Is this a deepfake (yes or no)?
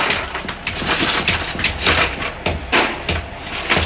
no